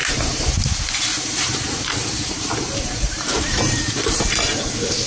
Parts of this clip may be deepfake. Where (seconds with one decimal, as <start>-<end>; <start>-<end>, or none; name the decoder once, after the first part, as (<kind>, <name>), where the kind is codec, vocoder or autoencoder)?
0.0-0.7 (vocoder, BigVGAN v2); 1.1-4.2